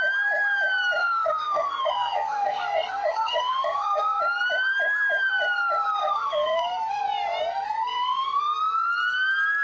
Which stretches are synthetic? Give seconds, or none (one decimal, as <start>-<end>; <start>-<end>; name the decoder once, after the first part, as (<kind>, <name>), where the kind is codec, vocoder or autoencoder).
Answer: 1.0-4.2 (codec, SNAC); 6.0-7.0; 7.5-8.4